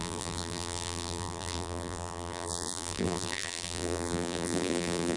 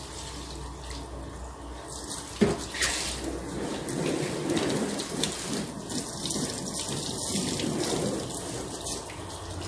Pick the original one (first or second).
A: second